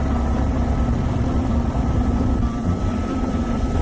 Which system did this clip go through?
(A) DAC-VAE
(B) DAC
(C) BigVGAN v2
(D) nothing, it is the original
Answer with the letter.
C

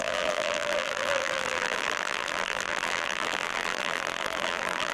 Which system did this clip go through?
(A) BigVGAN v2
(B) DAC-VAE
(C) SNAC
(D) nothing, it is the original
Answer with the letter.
A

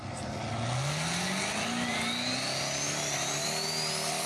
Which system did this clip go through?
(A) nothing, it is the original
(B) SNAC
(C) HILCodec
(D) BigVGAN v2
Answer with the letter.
A